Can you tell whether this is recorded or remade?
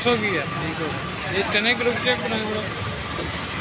recorded